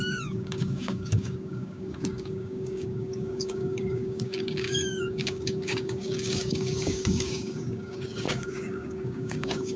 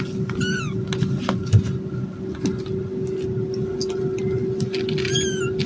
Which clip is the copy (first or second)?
first